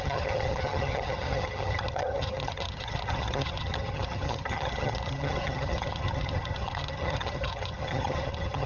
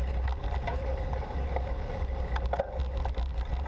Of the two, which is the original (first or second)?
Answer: second